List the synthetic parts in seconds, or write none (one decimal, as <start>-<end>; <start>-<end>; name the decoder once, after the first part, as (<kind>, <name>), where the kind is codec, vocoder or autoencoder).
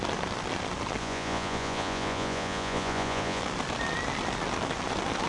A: 1.0-3.4 (vocoder, Vocos)